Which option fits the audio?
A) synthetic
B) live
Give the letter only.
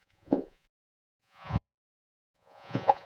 A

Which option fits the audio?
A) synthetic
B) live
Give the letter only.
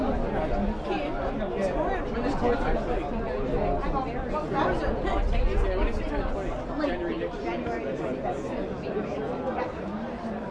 B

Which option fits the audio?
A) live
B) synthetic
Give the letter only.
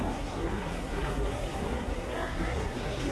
B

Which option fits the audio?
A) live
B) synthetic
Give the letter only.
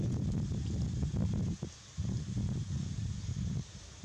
A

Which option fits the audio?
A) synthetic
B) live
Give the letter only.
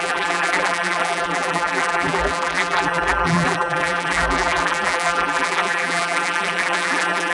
A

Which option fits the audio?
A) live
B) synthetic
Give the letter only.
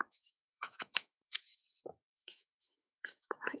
B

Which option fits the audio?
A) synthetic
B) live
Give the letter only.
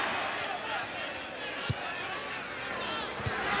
B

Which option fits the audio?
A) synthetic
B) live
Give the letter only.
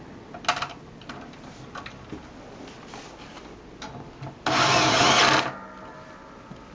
B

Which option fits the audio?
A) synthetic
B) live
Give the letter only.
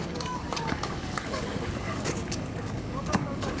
A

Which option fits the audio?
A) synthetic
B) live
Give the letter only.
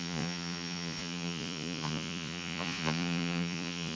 A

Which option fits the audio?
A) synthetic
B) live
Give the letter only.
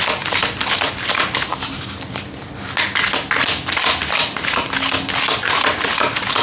B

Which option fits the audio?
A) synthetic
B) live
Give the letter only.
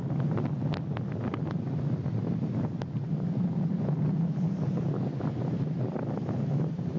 B